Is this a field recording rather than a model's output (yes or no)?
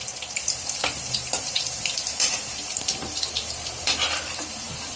no